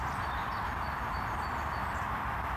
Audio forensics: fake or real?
fake